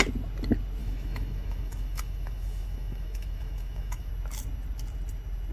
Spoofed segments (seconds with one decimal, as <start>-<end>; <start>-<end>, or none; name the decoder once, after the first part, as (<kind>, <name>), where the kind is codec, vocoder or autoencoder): 0.8-4.1 (autoencoder, DAC-VAE)